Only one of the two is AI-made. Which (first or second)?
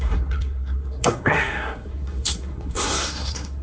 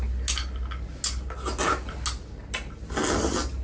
first